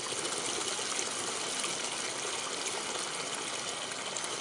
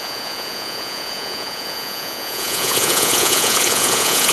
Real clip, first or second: first